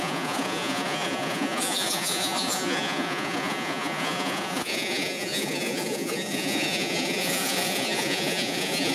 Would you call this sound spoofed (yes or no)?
yes